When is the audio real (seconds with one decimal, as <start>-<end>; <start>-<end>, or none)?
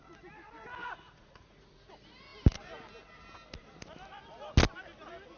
0.0-0.8; 1.9-5.4